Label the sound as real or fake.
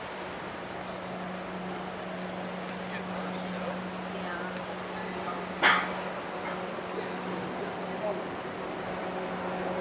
real